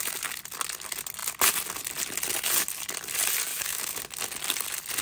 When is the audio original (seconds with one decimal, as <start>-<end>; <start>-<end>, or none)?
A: 0.0-3.5; 4.0-5.0